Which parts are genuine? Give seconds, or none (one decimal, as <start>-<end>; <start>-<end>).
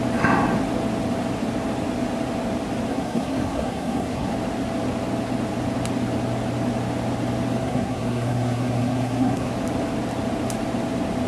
0.0-2.9; 4.3-7.6; 9.5-11.3